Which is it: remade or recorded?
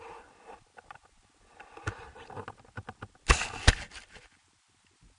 recorded